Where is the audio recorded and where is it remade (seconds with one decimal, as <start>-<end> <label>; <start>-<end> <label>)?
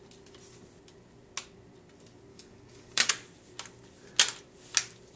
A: 0.0-2.3 recorded; 2.3-3.1 remade; 3.1-5.2 recorded